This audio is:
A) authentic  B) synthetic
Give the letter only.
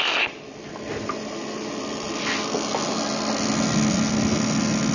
A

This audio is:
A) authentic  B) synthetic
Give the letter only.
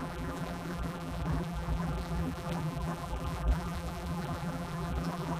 B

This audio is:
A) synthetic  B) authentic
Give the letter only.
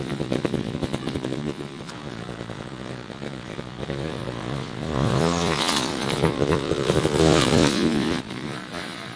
A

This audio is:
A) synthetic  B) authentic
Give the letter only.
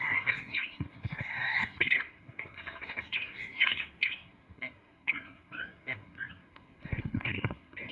A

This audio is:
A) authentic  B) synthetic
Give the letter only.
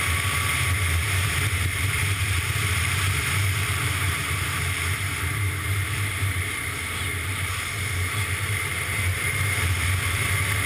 B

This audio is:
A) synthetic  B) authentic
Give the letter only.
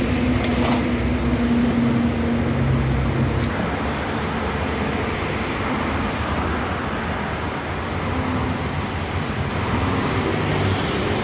B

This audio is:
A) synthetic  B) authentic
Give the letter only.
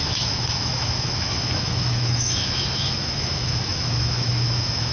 A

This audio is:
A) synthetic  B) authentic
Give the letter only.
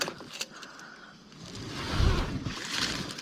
B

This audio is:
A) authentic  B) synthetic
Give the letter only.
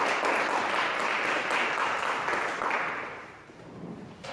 A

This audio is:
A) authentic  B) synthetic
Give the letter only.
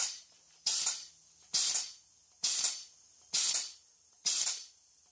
A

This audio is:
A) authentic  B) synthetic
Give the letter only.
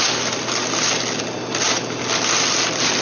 A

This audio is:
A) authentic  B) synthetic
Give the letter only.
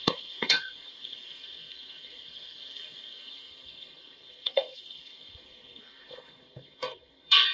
B